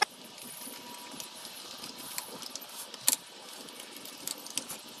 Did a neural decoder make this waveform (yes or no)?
no